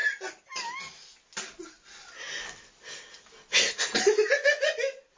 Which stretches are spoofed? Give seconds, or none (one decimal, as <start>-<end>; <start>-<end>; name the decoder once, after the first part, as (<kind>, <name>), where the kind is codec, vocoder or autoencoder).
none